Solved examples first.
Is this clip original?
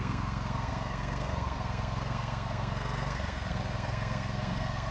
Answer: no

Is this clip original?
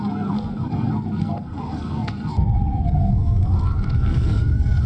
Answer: no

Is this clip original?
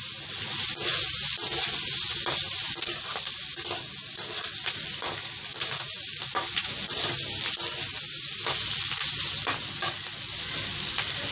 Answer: yes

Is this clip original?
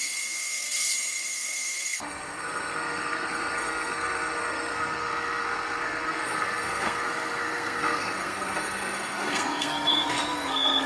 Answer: no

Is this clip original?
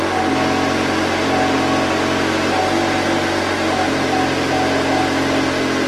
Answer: yes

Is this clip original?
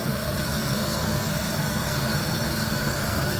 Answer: no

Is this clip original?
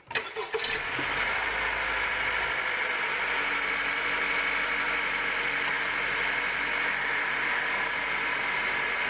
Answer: yes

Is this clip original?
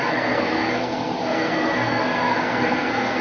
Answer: no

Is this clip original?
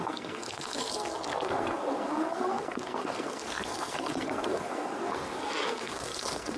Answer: no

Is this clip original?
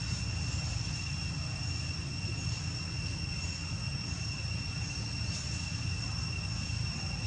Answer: yes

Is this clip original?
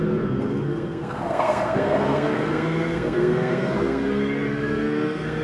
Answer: no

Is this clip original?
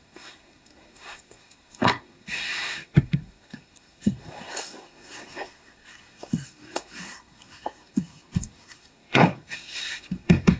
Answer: no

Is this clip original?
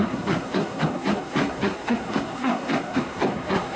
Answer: no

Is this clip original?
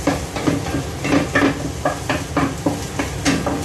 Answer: yes